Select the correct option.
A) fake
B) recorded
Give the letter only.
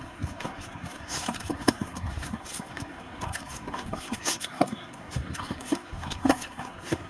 A